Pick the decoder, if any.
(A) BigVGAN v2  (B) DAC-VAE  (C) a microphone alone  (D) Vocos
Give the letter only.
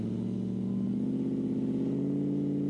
C